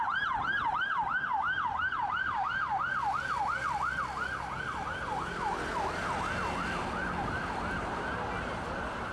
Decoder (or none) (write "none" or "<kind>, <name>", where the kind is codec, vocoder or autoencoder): none